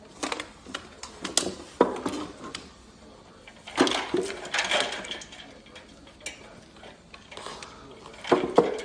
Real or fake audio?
real